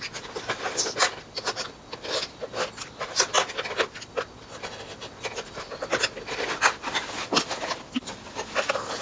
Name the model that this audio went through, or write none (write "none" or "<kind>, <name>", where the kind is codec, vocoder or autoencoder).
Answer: none